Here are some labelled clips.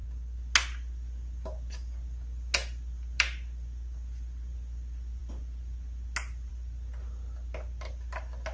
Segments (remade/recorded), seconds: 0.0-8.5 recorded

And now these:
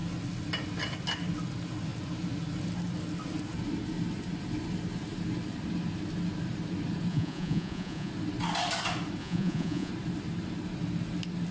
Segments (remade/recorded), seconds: 0.0-7.1 recorded; 7.1-8.1 remade; 8.1-9.2 recorded; 9.2-9.9 remade; 9.9-11.5 recorded

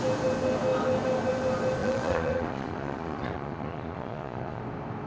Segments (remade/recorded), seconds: 0.0-1.8 recorded; 1.8-4.6 remade; 4.6-5.1 recorded

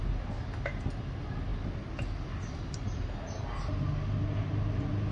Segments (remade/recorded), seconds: 0.0-5.1 recorded

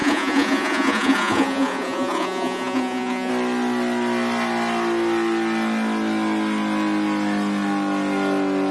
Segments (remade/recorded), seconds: 0.0-3.3 remade; 3.3-8.7 recorded